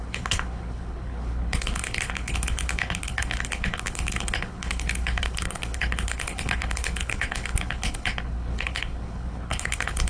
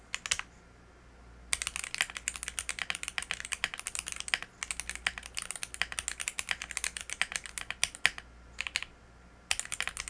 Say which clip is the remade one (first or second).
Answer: first